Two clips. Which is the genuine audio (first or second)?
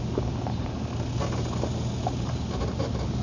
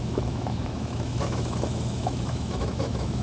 first